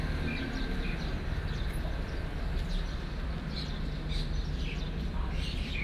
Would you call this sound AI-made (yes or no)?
no